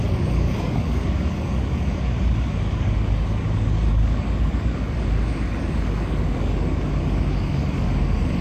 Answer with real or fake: fake